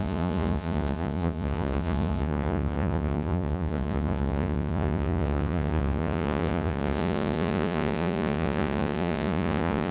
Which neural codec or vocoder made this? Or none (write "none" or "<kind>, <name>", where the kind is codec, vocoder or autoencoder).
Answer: vocoder, Vocos